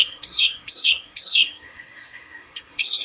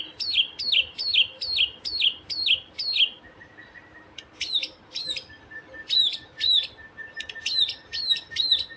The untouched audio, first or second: second